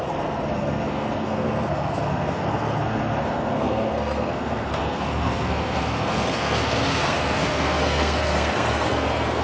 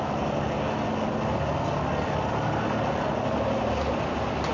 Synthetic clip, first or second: first